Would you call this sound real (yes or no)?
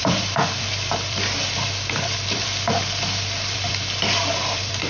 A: no